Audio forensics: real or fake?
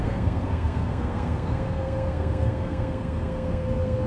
fake